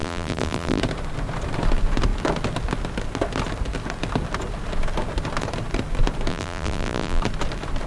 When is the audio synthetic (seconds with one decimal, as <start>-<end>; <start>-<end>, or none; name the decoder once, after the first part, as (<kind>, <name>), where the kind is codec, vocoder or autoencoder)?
0.0-0.8 (vocoder, BigVGAN v2); 6.3-7.2